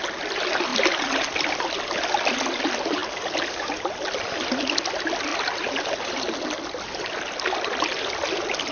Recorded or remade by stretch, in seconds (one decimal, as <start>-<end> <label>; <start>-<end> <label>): 0.0-0.7 recorded; 0.7-1.8 remade; 1.8-8.7 recorded

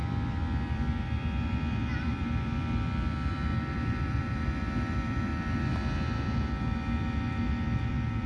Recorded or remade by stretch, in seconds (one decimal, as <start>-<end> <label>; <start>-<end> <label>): 0.0-5.3 remade; 5.3-7.9 recorded; 7.9-8.3 remade

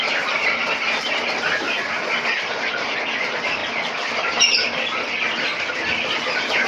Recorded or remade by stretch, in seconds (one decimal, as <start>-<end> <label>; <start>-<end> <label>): 0.0-6.7 recorded

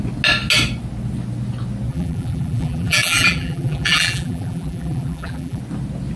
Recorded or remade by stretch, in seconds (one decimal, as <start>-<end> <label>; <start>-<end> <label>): 0.0-1.9 recorded; 1.9-5.6 remade; 5.6-6.2 recorded